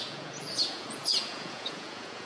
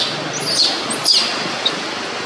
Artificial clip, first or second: first